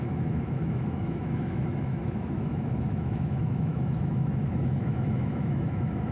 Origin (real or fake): fake